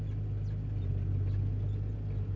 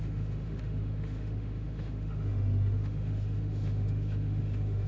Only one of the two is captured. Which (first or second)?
first